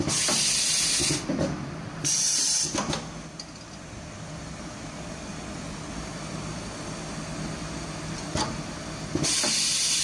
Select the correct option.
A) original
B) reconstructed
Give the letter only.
A